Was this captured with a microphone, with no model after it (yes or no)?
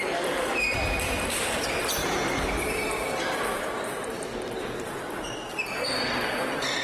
yes